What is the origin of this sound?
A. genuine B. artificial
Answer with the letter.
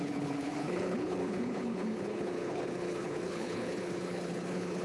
B